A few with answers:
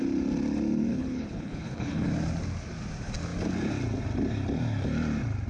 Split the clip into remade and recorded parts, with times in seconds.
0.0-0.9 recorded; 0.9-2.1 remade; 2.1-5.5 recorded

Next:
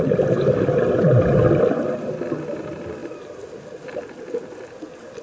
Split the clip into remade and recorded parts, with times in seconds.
0.0-5.2 recorded

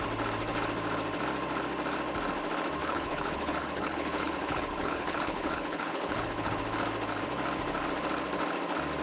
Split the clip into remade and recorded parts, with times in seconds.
0.0-2.8 recorded; 2.8-6.6 remade; 6.6-9.0 recorded

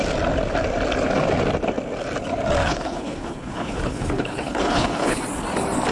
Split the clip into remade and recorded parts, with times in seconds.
0.0-2.6 recorded; 2.6-5.2 remade; 5.2-5.9 recorded

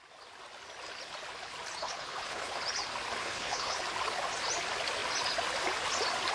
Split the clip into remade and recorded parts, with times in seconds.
0.0-1.8 recorded; 1.8-2.6 remade; 2.6-3.2 recorded; 3.2-3.8 remade; 3.8-6.3 recorded